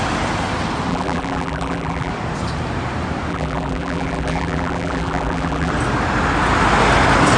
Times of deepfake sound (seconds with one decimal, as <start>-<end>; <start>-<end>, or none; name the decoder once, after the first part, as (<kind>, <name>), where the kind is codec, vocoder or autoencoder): 0.9-2.1 (vocoder, BigVGAN v2); 3.3-5.7